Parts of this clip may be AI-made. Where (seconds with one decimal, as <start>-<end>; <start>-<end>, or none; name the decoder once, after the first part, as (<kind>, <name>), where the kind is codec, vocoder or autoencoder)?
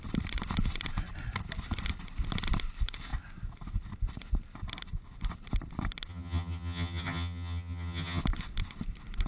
6.1-8.2 (vocoder, HiFi-GAN)